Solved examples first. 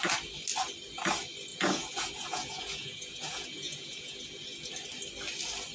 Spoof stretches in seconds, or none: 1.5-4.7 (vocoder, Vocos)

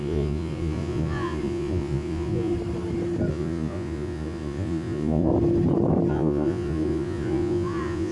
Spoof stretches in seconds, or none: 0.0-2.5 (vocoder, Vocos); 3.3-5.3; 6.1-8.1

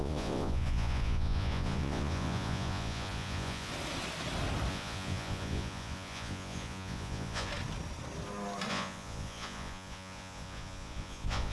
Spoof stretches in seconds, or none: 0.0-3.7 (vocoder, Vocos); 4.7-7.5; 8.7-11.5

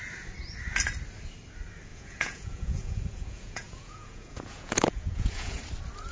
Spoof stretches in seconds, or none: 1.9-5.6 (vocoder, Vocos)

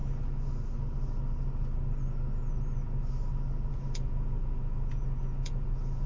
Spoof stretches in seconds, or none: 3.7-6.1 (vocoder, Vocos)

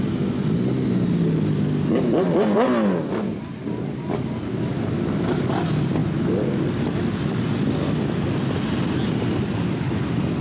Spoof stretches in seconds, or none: none

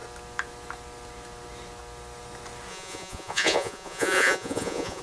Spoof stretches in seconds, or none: 2.7-5.0 (vocoder, Vocos)